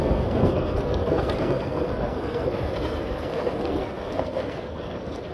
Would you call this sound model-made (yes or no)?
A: yes